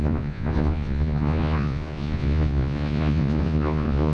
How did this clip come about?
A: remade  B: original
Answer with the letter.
A